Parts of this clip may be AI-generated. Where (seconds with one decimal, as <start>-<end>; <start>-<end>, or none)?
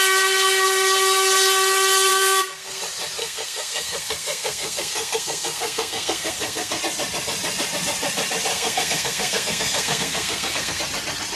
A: 2.1-2.8; 3.2-6.8; 8.5-10.8